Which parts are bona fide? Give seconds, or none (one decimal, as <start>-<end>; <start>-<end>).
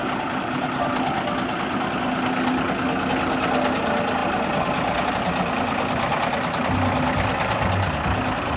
0.0-8.6